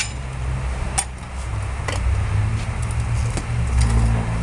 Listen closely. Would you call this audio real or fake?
real